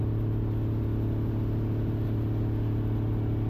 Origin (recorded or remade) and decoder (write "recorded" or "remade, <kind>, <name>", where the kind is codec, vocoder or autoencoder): recorded